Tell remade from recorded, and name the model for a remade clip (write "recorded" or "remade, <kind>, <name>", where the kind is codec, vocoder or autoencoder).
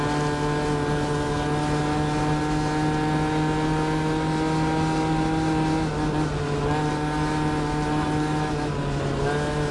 recorded